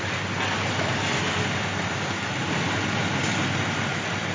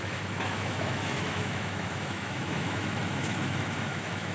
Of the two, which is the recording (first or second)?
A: first